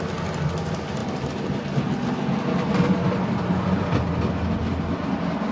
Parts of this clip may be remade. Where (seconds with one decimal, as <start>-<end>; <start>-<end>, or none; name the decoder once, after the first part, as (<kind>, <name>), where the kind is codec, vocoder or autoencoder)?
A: none

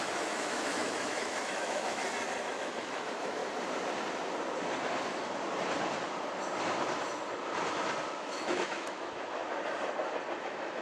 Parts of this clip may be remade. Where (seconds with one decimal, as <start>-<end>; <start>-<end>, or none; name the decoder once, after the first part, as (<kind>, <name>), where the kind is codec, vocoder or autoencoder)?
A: 0.0-2.0 (autoencoder, DAC-VAE); 2.5-3.4; 8.1-9.4; 10.4-10.8

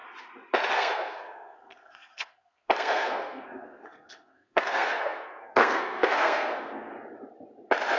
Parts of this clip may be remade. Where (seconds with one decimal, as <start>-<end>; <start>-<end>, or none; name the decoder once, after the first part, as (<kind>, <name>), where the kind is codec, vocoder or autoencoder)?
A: 0.7-6.9 (codec, SNAC)

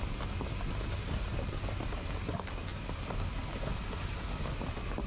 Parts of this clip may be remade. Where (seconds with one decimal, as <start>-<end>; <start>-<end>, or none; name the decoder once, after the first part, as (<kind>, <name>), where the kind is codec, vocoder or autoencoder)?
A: none

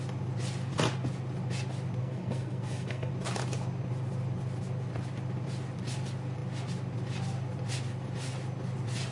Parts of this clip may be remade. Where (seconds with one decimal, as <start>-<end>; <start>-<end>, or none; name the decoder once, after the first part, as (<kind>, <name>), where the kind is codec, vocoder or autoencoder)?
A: 2.0-3.1 (codec, SNAC)